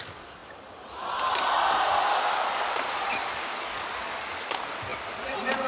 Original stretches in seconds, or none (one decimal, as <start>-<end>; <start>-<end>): 0.0-3.5; 4.1-5.7